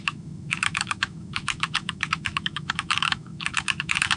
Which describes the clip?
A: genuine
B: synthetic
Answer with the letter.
B